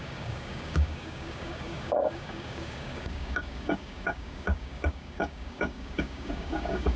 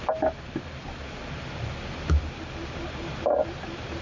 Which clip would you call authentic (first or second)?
second